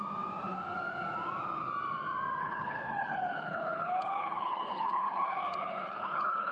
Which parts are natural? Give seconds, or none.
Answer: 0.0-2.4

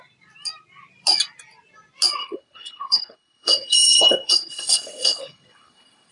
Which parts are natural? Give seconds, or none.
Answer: 0.0-2.2

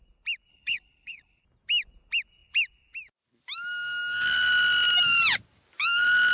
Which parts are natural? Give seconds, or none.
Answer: 0.0-0.5; 1.4-6.3